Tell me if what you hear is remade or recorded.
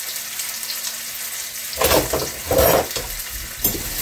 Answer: recorded